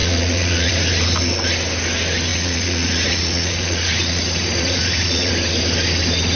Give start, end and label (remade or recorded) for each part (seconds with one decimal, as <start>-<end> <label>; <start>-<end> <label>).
0.0-0.7 remade; 0.7-2.3 recorded; 2.3-5.3 remade; 5.3-6.4 recorded